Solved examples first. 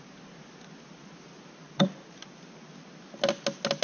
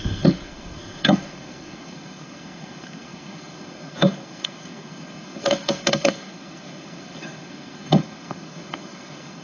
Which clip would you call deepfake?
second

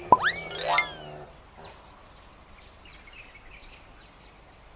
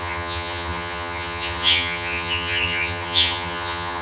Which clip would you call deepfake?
second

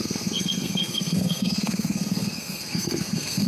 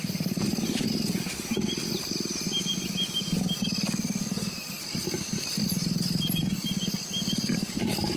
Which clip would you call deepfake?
first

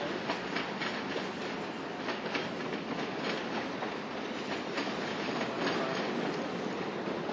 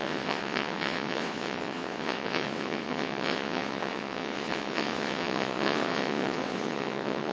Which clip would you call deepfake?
second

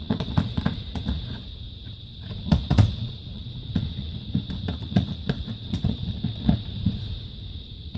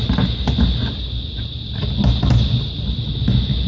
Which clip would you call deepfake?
first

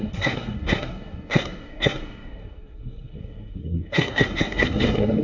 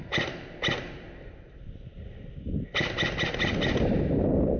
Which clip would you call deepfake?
first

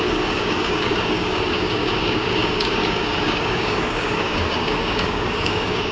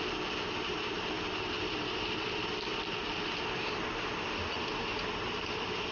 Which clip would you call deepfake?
first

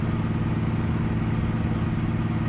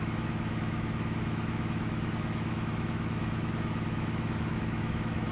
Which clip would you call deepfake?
second